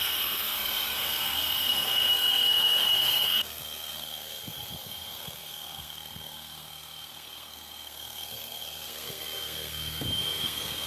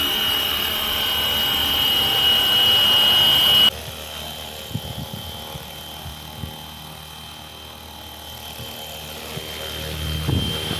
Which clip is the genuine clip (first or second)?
second